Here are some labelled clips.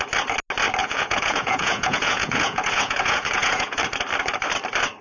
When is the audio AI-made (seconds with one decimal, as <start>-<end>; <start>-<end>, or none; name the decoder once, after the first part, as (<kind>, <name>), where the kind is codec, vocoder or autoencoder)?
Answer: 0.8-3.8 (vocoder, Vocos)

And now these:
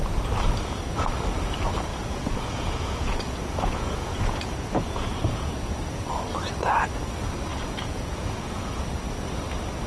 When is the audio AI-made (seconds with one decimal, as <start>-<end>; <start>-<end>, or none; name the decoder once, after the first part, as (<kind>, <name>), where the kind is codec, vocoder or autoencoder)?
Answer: 1.9-5.8 (vocoder, Vocos); 7.5-8.8

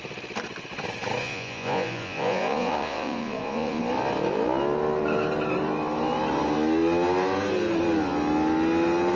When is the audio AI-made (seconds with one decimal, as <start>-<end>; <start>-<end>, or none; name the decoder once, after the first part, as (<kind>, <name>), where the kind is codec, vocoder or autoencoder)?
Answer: 1.2-3.8 (vocoder, Vocos)